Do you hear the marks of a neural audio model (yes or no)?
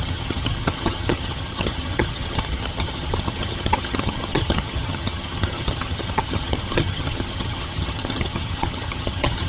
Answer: yes